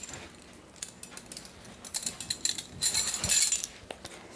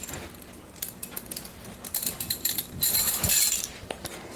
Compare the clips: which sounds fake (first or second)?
second